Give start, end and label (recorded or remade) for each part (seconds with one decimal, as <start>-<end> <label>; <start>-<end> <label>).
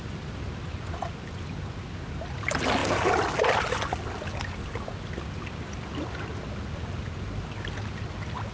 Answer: 0.0-8.5 recorded